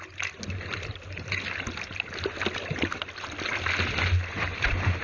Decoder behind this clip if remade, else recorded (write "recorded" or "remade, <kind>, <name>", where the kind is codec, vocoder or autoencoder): recorded